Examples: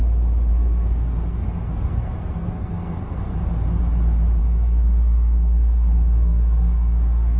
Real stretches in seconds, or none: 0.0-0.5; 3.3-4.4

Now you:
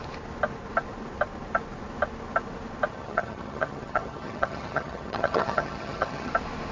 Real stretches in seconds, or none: 0.0-2.9; 6.3-6.7

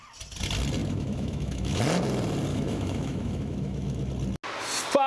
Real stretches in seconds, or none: 0.0-0.8; 1.8-2.5; 4.1-5.1

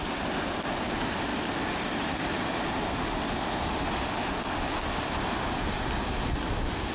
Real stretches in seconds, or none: 0.0-1.3; 2.4-6.9

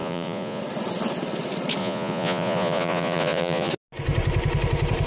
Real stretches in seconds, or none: 0.6-1.8; 3.7-5.1

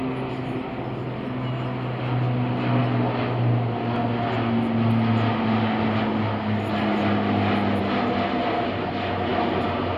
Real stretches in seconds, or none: 0.0-9.3